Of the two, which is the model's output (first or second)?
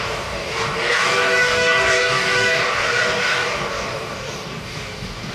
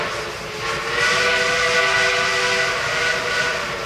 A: first